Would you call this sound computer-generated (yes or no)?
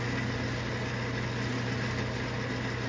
no